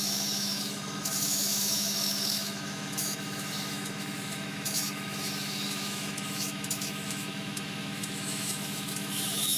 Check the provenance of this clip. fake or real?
fake